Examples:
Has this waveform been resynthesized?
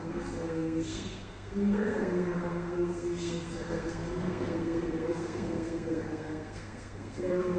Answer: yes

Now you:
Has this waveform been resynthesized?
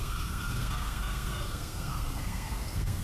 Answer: yes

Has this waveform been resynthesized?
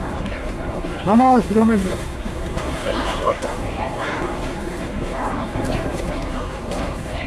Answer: yes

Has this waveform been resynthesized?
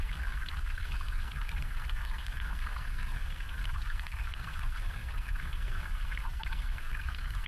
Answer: yes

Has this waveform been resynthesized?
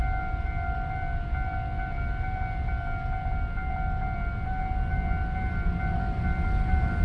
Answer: no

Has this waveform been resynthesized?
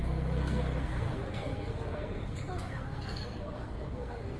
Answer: yes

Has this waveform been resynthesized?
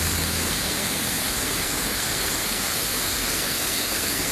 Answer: yes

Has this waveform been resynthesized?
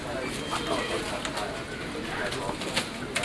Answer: no